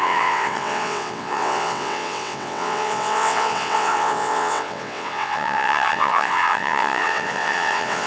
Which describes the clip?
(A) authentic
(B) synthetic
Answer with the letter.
B